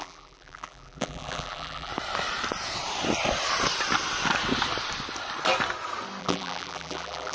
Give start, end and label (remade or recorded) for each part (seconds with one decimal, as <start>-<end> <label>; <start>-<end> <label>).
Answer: 0.0-1.9 remade; 1.9-6.2 recorded; 6.2-7.3 remade